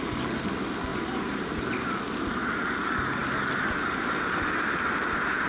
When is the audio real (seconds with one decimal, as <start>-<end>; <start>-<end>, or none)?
0.0-0.9; 2.0-5.5